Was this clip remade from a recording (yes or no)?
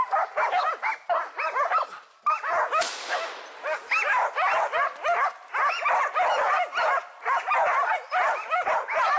no